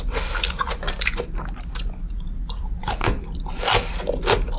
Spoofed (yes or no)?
no